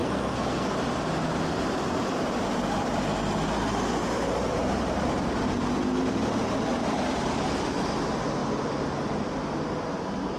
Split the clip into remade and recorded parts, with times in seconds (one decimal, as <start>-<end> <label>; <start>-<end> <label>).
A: 0.0-0.7 remade; 0.7-10.4 recorded